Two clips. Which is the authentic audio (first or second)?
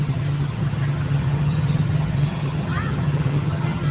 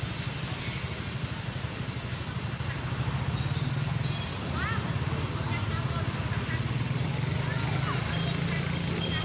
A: second